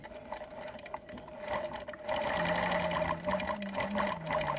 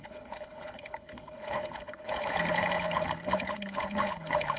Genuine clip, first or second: first